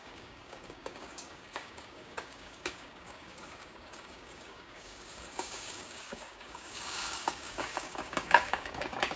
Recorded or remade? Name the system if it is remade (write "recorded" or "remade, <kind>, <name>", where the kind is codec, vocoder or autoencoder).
remade, codec, DAC